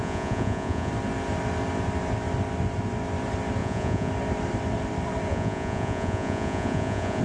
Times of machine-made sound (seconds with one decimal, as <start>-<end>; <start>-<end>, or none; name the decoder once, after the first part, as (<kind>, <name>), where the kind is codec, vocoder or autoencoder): 0.0-0.9 (vocoder, Vocos); 3.6-4.1; 5.3-7.2